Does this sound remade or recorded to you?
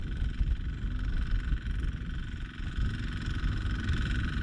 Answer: recorded